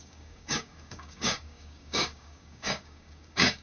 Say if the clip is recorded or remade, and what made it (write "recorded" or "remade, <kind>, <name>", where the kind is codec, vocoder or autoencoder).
remade, codec, DAC